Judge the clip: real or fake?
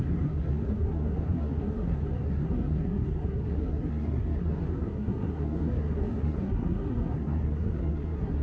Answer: fake